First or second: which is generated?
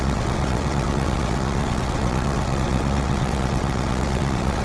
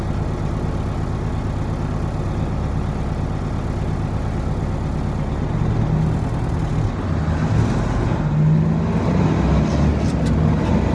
first